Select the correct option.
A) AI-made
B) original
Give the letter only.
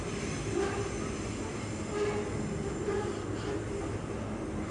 B